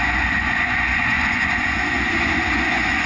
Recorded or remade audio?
remade